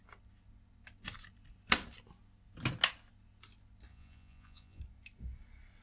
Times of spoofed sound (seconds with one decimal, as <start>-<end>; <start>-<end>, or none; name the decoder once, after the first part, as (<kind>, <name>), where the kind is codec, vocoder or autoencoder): 3.9-4.8 (vocoder, Vocos)